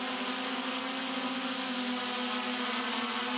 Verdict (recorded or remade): recorded